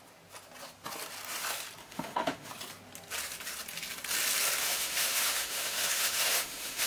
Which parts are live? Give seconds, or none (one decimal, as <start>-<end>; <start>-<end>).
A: 0.0-1.8; 2.5-4.6